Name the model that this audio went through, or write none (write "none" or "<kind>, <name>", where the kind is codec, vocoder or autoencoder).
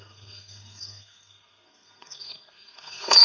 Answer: codec, SNAC